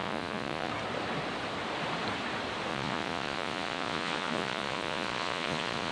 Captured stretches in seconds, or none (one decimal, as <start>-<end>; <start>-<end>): 0.7-2.7